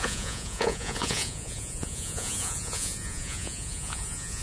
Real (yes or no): no